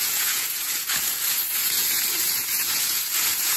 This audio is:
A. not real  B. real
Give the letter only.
A